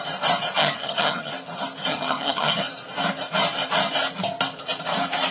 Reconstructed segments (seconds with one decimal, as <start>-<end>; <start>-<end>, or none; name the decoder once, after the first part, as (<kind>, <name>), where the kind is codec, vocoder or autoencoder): 0.6-1.3 (vocoder, HiFi-GAN); 1.9-2.6

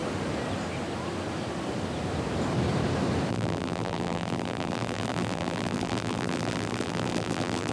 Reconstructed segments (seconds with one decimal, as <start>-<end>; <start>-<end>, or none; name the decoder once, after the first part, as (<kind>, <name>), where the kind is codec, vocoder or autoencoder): 3.3-7.7 (vocoder, BigVGAN v2)

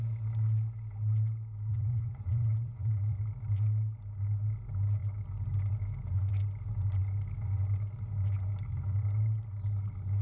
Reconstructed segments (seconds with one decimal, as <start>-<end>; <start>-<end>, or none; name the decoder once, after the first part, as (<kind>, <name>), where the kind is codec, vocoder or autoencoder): 1.7-3.2 (vocoder, Vocos)

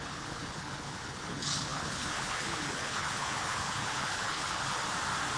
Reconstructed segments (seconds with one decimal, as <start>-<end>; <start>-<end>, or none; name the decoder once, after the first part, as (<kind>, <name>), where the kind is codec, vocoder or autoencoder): 0.0-4.8 (codec, HILCodec)